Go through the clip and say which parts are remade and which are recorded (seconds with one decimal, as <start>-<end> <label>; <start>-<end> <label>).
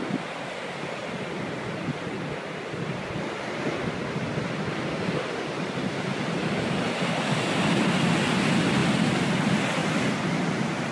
0.0-1.0 recorded; 1.0-1.5 remade; 1.5-4.3 recorded; 4.3-7.0 remade; 7.0-9.8 recorded; 9.8-10.3 remade; 10.3-10.9 recorded